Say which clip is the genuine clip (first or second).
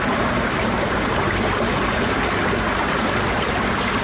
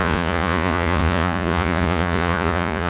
first